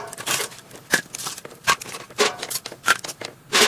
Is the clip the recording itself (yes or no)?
yes